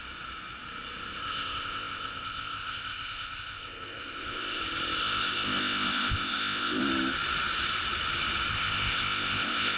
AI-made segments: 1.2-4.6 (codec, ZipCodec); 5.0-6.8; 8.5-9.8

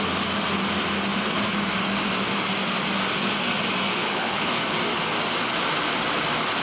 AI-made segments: 3.9-4.6 (codec, HILCodec)

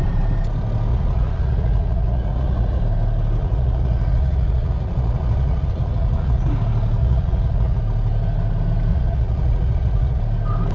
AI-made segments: 0.9-2.8 (vocoder, Vocos); 3.4-6.5; 7.0-7.8; 8.9-10.2